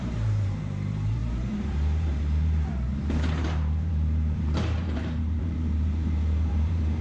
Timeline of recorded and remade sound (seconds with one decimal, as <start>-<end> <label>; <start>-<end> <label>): 0.0-7.0 remade